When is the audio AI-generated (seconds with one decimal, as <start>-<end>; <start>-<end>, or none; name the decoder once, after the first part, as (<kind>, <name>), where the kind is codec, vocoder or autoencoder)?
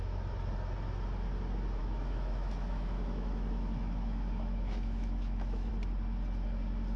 1.8-5.7 (autoencoder, DAC-VAE)